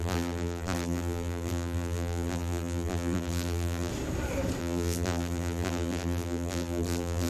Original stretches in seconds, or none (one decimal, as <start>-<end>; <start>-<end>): 3.9-4.6